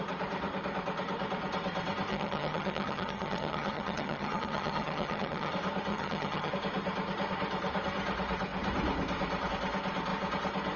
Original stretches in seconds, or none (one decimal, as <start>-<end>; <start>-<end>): 0.0-2.1; 5.5-5.9; 6.5-10.8